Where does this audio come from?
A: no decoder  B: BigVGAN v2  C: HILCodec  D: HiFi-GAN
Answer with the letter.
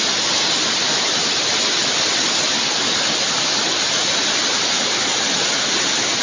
A